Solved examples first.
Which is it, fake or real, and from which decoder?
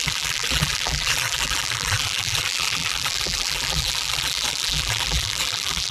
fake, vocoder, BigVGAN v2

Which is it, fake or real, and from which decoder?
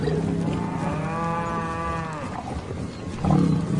real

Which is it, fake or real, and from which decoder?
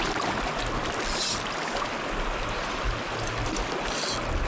real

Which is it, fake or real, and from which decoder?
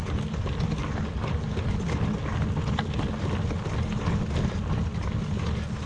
real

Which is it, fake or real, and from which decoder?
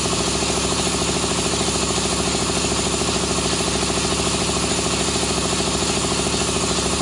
real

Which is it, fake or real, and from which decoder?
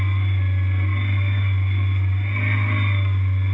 real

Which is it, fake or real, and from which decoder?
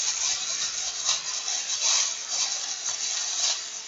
real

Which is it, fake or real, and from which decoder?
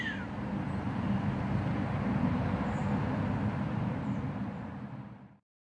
fake, vocoder, BigVGAN v2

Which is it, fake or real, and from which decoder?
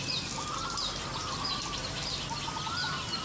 real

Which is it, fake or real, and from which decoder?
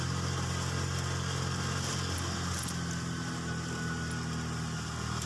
real